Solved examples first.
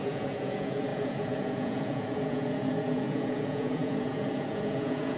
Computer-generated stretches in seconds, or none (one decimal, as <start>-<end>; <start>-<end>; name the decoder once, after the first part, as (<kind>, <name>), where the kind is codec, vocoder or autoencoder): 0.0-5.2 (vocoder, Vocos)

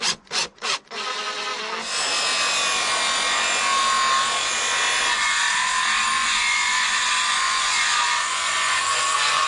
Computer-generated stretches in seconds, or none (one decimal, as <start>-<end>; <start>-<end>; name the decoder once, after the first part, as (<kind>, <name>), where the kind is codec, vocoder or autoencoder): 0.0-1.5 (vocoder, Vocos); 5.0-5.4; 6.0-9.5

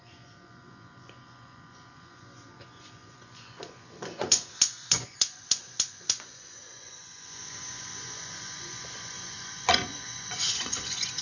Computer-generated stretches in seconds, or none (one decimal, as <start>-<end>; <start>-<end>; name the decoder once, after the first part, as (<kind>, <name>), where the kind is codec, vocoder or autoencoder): 0.0-11.2 (vocoder, Vocos)

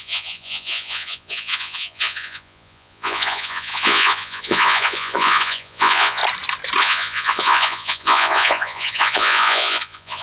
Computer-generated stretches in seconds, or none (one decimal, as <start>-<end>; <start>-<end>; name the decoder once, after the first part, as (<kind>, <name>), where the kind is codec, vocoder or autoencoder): 0.0-6.2 (vocoder, Vocos); 6.8-10.2